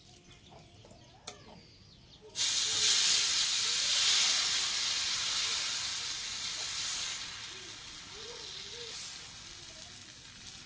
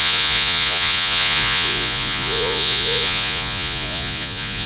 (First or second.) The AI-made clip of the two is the second